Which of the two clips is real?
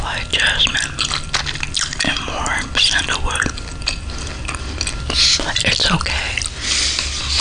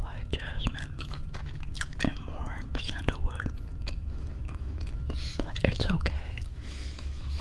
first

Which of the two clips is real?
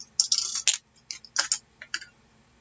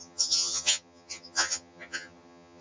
first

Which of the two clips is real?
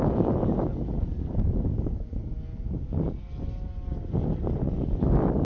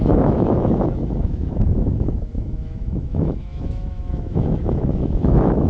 first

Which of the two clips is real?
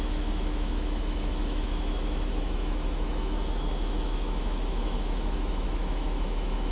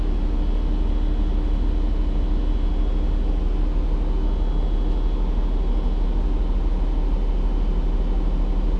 second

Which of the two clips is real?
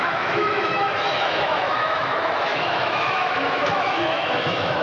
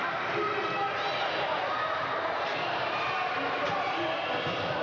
second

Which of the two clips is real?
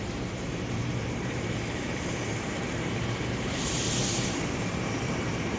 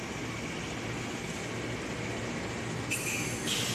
second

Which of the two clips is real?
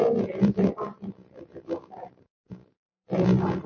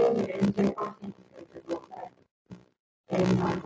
second